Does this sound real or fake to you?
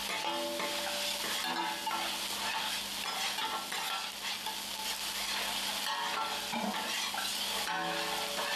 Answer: real